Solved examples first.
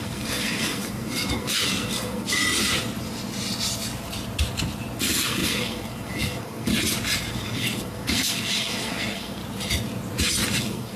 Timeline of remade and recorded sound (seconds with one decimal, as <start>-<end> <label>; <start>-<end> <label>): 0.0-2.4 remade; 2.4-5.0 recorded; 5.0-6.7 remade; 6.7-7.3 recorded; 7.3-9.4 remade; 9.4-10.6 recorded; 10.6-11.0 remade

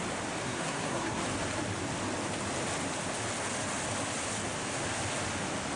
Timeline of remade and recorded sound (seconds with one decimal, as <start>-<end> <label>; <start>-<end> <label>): 0.0-0.4 recorded; 0.4-1.2 remade; 1.2-5.8 recorded

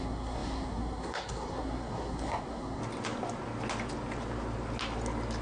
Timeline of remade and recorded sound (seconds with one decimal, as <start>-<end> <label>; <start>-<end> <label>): 0.0-2.8 remade; 2.8-5.4 recorded

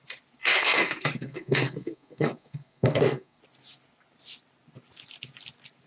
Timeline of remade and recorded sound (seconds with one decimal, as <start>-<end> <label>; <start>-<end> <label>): 0.0-0.4 recorded; 0.4-3.4 remade; 3.4-5.9 recorded